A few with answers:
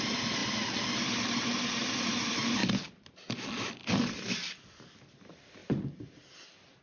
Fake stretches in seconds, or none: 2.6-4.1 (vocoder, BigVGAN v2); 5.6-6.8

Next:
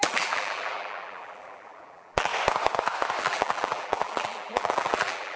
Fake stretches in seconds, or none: 0.0-2.3 (vocoder, BigVGAN v2); 3.2-5.4

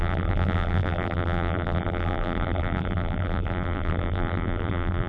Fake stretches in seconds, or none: 0.0-5.1 (vocoder, BigVGAN v2)

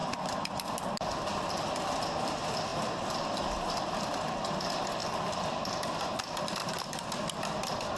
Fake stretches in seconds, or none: 6.6-7.1 (vocoder, BigVGAN v2)

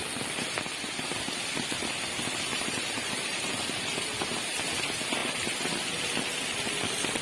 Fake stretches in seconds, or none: 2.5-3.5 (vocoder, BigVGAN v2)

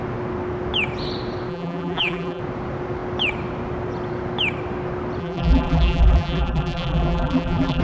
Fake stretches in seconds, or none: 1.5-2.4 (vocoder, BigVGAN v2); 5.2-7.8

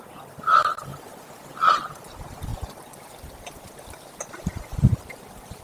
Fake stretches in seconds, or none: 0.0-0.9 (vocoder, BigVGAN v2); 1.7-2.5; 3.9-5.6